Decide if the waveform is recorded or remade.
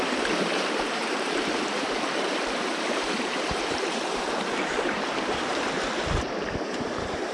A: remade